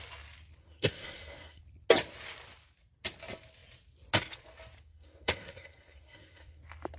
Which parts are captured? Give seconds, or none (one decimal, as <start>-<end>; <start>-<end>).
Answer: 0.0-0.6; 1.6-4.9; 6.6-7.0